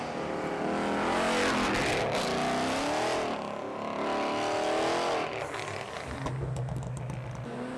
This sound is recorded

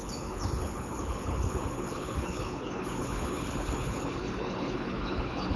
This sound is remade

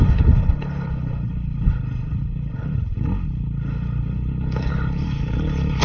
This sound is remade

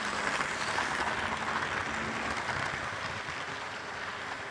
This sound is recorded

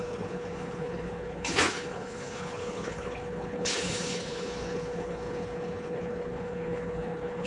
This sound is remade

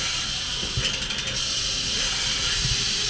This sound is recorded